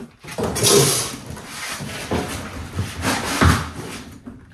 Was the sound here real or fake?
real